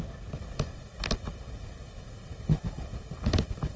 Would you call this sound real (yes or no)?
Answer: yes